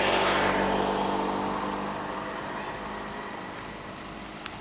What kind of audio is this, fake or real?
real